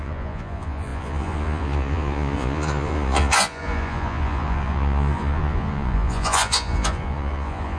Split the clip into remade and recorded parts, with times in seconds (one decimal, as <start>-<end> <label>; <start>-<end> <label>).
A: 0.0-7.8 remade